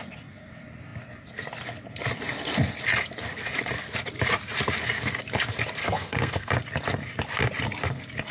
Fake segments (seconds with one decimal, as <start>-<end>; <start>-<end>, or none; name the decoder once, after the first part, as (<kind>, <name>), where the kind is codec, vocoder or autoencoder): 5.8-6.5 (codec, SNAC)